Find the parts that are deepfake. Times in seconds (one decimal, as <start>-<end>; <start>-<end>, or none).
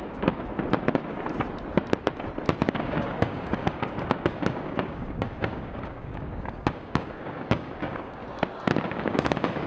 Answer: 0.0-0.6; 2.7-8.2; 8.9-9.7